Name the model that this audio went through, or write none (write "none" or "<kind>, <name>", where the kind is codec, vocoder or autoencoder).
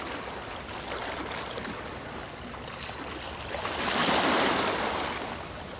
none